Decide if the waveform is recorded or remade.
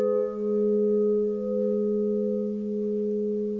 recorded